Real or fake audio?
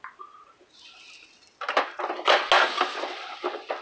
real